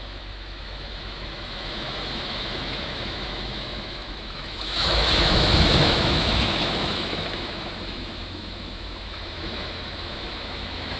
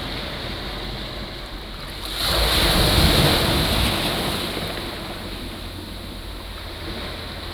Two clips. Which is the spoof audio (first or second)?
first